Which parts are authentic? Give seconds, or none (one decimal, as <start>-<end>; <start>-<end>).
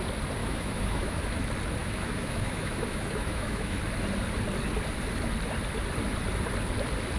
0.0-0.4; 1.2-1.8; 3.8-7.2